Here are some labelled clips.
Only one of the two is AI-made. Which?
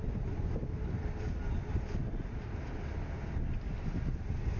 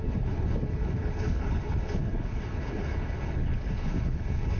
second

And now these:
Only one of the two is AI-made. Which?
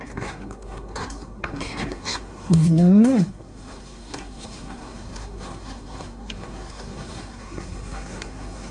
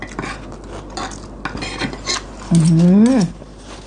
first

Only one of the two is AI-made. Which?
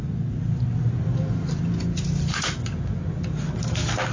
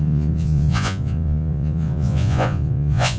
second